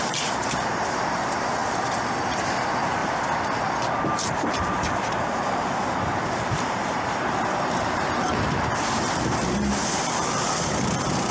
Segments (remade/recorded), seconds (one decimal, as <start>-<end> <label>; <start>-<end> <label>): 0.0-1.6 remade; 1.6-2.4 recorded; 2.4-3.0 remade; 3.0-4.1 recorded; 4.1-11.3 remade